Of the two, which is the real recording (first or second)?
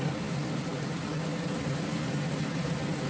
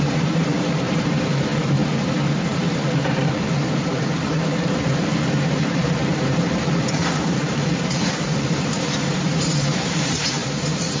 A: first